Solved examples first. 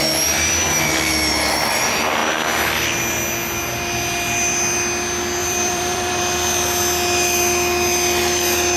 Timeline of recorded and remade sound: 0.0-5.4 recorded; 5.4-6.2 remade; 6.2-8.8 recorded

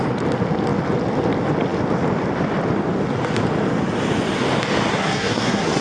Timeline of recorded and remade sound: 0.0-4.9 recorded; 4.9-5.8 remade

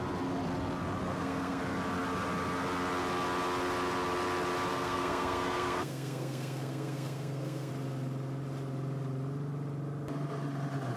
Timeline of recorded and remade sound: 0.0-1.1 recorded; 1.1-1.6 remade; 1.6-4.7 recorded; 4.7-7.7 remade; 7.7-11.0 recorded

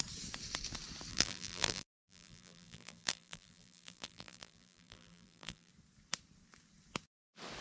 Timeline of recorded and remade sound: 0.0-1.1 recorded; 1.1-5.7 remade; 5.7-7.6 recorded

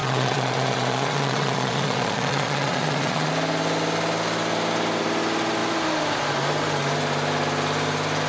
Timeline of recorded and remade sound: 0.0-3.3 remade; 3.3-8.3 recorded